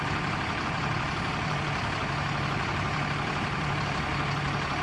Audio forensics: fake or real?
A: fake